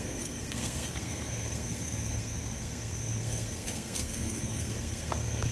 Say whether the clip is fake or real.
fake